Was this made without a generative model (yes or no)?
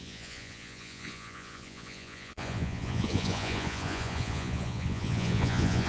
no